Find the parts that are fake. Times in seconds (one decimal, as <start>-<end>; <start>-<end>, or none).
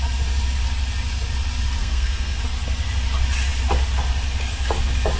1.8-2.4